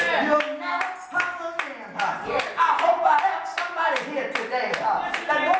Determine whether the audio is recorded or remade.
recorded